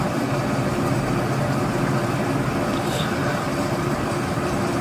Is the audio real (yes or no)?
yes